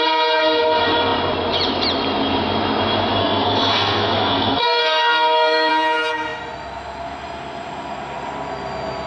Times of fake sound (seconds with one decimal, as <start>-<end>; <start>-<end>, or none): 3.2-5.7